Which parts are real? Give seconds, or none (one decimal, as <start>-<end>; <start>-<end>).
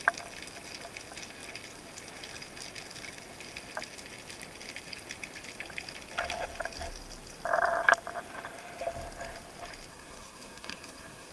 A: 0.0-9.9